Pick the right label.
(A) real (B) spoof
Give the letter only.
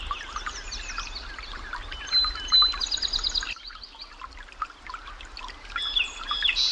A